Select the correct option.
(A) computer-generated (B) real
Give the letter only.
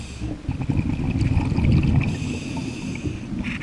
B